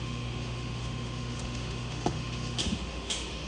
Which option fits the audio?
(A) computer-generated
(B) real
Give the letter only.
A